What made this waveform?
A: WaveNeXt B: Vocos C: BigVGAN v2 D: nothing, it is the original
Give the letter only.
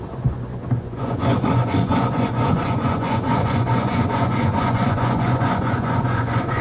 B